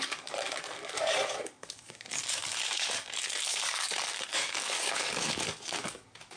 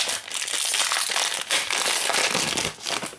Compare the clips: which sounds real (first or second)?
second